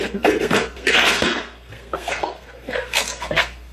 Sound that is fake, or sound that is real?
fake